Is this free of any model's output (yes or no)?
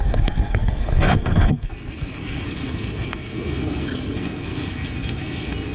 no